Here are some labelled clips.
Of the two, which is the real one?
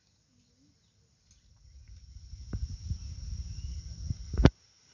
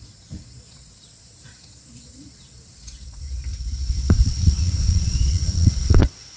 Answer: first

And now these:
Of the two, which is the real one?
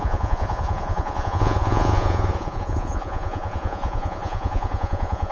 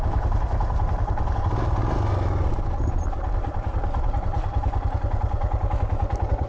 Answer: second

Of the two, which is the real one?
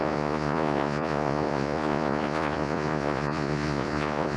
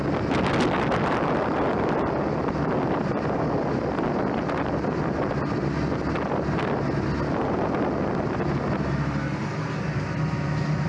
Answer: second